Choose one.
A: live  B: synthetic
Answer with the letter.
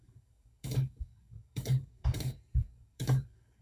B